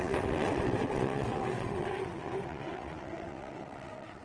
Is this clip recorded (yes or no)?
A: no